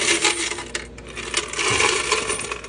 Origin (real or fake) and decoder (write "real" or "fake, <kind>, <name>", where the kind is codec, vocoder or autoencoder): real